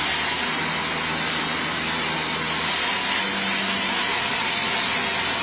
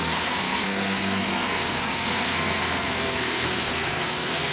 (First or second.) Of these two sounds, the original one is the first